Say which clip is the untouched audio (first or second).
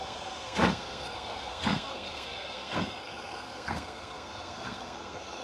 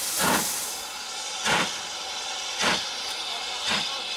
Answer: second